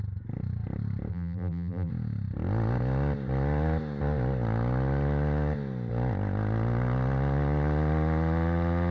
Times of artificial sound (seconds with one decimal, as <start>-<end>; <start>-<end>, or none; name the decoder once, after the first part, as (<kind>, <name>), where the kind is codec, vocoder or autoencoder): 1.1-1.9 (vocoder, BigVGAN v2)